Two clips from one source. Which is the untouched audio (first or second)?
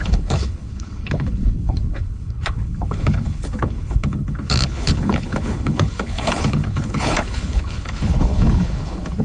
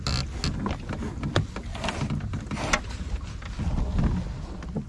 second